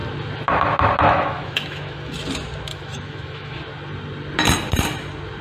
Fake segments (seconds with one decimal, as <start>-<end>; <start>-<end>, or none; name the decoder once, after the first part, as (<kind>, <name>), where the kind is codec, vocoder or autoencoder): 1.0-2.1 (autoencoder, DAC-VAE); 2.7-3.6